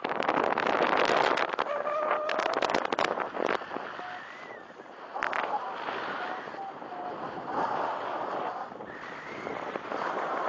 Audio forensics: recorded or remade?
recorded